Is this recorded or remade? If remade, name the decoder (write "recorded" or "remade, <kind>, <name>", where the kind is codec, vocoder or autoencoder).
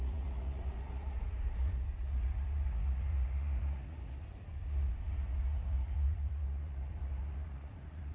remade, vocoder, Vocos